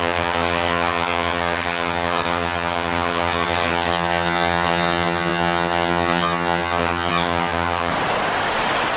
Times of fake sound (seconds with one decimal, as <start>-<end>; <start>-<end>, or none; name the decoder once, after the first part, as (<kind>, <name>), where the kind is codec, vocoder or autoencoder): 0.0-7.9 (vocoder, HiFi-GAN)